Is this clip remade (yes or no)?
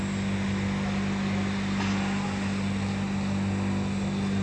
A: no